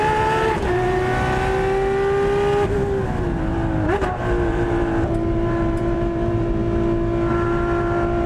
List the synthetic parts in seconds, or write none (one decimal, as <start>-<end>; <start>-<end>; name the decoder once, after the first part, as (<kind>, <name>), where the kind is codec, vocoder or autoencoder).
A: 0.0-1.1 (vocoder, BigVGAN v2); 4.1-6.6; 7.3-8.3